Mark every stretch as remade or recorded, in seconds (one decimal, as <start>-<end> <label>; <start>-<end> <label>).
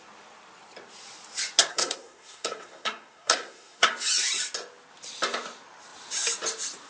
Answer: 0.0-1.7 recorded; 1.7-3.9 remade; 3.9-6.9 recorded